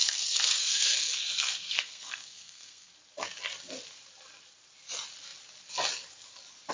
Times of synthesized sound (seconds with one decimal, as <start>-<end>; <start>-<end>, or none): 0.0-2.9